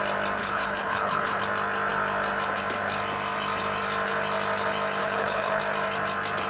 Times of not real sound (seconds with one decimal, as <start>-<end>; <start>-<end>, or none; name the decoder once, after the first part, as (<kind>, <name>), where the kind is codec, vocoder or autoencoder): 0.4-1.4 (codec, HILCodec); 5.0-5.6